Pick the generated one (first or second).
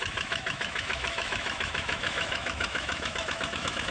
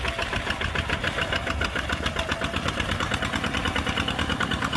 first